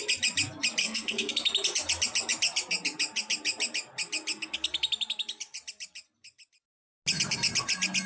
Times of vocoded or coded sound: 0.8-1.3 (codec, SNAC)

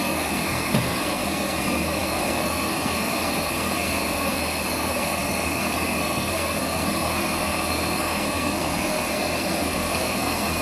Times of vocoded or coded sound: 0.0-10.6 (codec, SNAC)

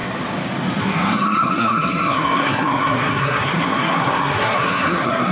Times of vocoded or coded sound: 0.8-5.3 (codec, SNAC)

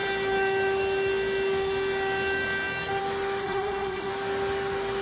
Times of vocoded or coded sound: 3.4-4.1 (codec, SNAC)